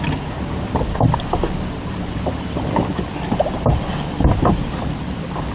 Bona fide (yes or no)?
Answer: yes